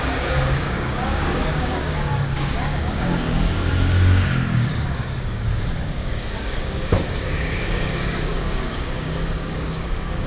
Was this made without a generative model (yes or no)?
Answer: no